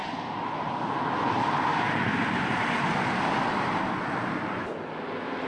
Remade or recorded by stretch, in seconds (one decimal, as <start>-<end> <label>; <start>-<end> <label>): 0.0-5.5 recorded